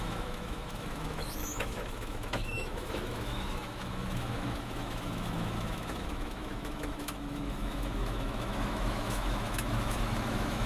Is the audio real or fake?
fake